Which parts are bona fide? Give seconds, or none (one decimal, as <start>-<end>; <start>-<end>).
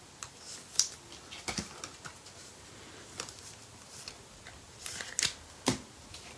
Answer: 0.0-3.6; 4.8-6.4